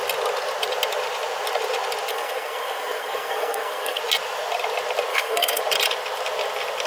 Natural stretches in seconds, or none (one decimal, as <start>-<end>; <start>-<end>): 0.0-2.1; 4.0-5.1; 5.6-6.9